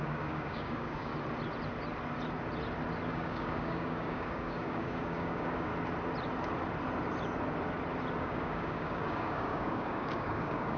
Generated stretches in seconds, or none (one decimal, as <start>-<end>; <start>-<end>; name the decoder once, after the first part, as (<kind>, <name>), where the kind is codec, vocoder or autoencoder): 0.0-1.1 (codec, DAC); 3.1-5.7; 8.2-10.8